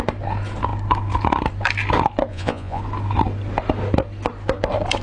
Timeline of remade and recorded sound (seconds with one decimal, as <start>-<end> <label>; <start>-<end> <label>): 0.0-2.3 recorded; 2.3-2.8 remade; 2.8-5.0 recorded